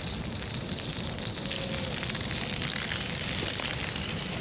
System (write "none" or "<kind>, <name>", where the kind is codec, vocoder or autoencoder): none